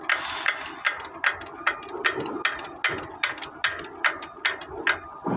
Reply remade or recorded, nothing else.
recorded